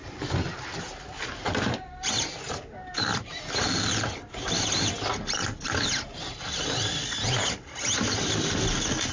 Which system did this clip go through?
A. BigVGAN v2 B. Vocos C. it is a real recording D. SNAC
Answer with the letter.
C